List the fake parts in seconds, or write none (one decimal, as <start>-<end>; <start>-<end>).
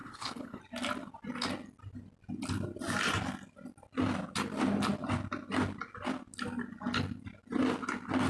0.0-0.6